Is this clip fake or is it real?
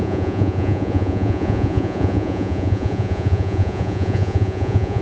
fake